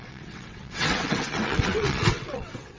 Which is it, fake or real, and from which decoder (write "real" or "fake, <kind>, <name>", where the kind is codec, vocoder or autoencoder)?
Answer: fake, vocoder, WaveNeXt